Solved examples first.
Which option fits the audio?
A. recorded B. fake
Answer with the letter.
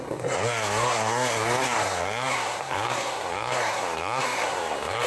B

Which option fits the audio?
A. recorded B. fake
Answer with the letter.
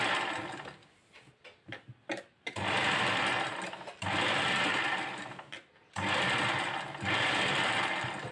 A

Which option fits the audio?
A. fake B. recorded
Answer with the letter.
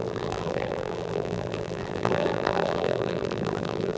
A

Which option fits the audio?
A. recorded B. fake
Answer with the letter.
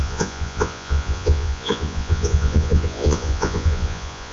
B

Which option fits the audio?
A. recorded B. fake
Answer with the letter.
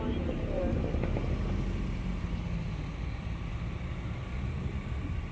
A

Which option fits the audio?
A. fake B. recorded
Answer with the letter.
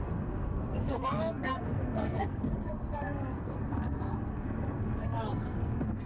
A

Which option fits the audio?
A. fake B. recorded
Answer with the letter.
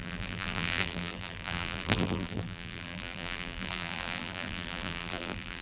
A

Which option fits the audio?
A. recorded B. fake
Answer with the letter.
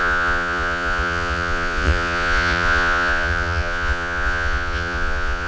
B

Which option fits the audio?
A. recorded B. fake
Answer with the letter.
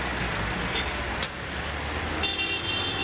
A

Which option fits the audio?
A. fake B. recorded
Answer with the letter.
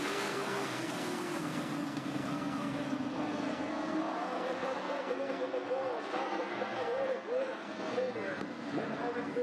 A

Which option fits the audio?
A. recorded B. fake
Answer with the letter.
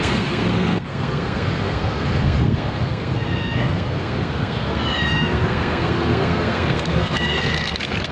B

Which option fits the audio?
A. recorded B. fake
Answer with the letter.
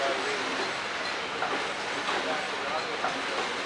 A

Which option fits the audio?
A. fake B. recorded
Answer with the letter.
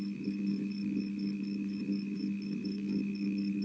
A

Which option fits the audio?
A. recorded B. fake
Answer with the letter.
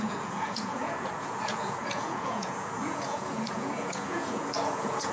B